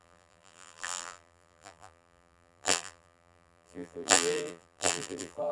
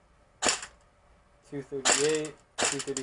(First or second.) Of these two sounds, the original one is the second